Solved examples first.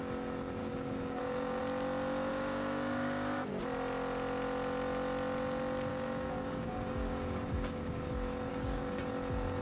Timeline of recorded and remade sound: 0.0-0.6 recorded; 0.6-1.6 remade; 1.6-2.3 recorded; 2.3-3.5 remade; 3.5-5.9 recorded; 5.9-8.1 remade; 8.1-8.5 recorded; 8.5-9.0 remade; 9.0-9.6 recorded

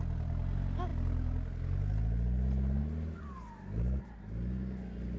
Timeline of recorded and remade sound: 0.0-5.2 recorded

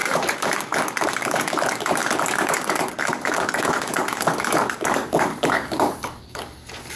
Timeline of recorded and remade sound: 0.0-7.0 remade

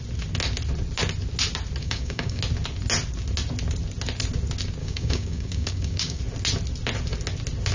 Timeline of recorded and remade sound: 0.0-1.8 recorded; 1.8-2.4 remade; 2.4-4.8 recorded; 4.8-6.2 remade; 6.2-7.7 recorded

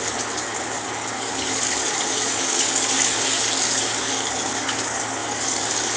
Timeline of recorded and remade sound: 0.0-6.0 remade

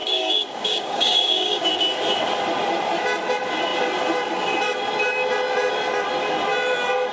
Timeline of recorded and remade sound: 0.0-1.7 remade; 1.7-7.1 recorded

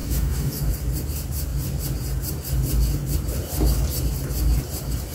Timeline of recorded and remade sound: 0.0-0.7 remade; 0.7-5.1 recorded

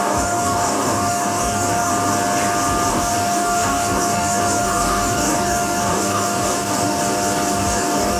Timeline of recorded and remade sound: 0.0-1.9 remade; 1.9-2.9 recorded; 2.9-7.0 remade; 7.0-7.5 recorded; 7.5-8.2 remade